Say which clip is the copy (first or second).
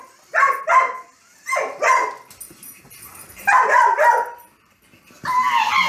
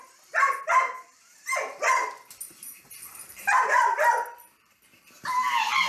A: second